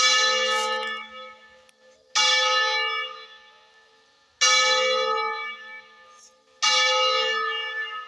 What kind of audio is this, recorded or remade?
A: recorded